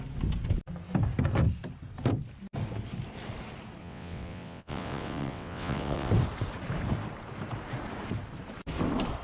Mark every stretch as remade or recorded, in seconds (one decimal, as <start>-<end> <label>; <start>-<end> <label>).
0.0-3.8 recorded; 3.8-6.1 remade; 6.1-9.2 recorded